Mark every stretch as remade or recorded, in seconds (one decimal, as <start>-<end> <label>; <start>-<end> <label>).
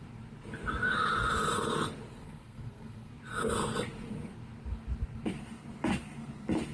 0.0-2.1 recorded; 2.1-3.1 remade; 3.1-6.7 recorded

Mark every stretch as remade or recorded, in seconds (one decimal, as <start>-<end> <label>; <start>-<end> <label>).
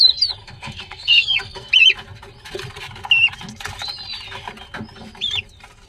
0.0-0.4 recorded; 0.4-1.7 remade; 1.7-5.9 recorded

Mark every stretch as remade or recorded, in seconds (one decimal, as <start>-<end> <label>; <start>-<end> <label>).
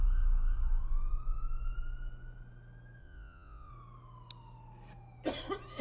0.0-3.0 recorded; 3.0-3.7 remade; 3.7-5.8 recorded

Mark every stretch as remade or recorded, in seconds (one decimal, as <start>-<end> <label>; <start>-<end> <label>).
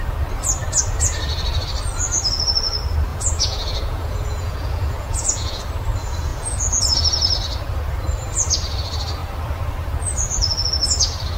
0.0-3.1 recorded; 3.1-5.6 remade; 5.6-6.3 recorded; 6.3-6.8 remade; 6.8-11.4 recorded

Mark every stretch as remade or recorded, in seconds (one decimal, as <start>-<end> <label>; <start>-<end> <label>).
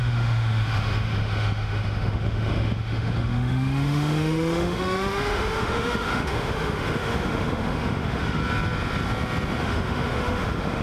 0.0-8.4 remade; 8.4-9.6 recorded; 9.6-10.8 remade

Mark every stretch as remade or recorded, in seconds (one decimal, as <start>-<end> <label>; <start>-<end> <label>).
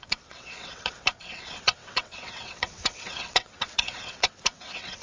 0.0-5.0 remade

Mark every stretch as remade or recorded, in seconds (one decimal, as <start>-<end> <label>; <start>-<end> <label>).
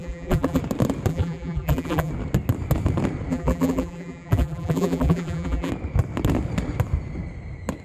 0.0-0.6 remade; 0.6-1.1 recorded; 1.1-2.1 remade; 2.1-3.3 recorded; 3.3-5.7 remade; 5.7-7.8 recorded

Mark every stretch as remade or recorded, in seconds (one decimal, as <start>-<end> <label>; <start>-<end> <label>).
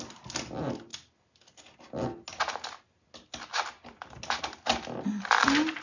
0.0-5.8 recorded